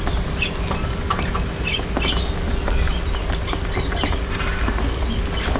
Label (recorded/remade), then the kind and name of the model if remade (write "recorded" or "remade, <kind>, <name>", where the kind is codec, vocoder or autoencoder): recorded